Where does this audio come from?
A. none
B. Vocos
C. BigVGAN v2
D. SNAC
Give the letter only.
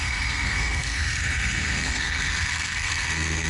D